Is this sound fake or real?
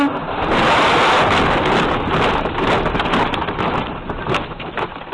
real